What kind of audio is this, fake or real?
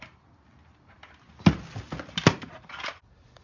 real